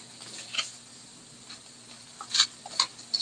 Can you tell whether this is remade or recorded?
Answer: recorded